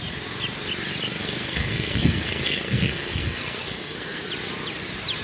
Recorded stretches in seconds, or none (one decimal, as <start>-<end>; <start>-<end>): 0.0-1.2; 4.3-5.2